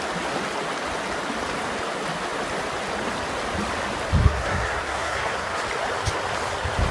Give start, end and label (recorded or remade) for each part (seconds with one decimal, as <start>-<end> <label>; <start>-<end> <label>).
0.0-4.2 recorded; 4.2-5.6 remade; 5.6-6.9 recorded